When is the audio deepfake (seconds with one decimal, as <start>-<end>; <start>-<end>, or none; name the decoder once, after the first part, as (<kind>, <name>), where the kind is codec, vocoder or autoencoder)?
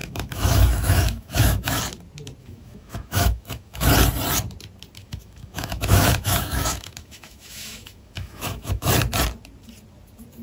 0.0-1.8 (autoencoder, DAC-VAE); 2.4-3.9; 5.0-8.9